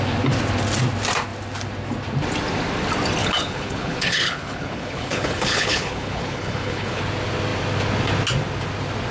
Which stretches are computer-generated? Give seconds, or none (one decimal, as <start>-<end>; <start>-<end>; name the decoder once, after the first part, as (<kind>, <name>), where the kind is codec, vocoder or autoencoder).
3.2-7.0 (codec, HILCodec)